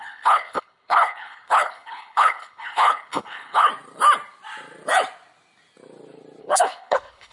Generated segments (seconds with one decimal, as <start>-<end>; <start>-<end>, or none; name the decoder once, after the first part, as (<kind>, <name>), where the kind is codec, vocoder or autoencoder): 0.0-3.7 (codec, HILCodec); 6.4-7.3